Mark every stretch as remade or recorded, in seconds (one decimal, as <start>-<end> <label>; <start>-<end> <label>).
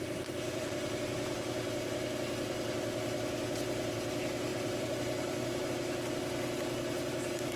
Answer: 0.0-4.5 recorded; 4.5-5.7 remade; 5.7-7.6 recorded